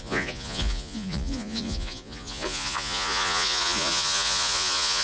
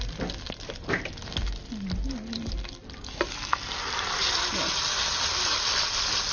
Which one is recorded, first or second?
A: second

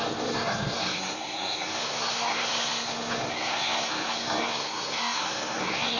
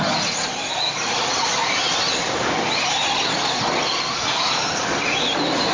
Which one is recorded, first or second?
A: second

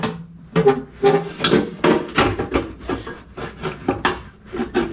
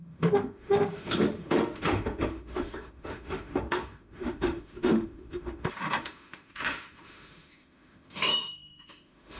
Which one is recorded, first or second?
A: first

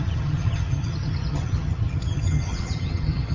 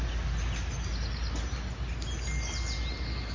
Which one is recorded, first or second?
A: second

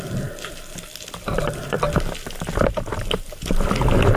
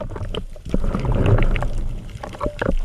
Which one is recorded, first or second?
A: first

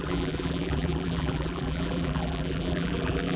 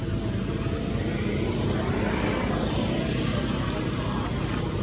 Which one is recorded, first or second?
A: second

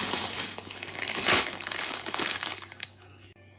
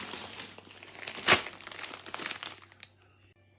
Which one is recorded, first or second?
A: second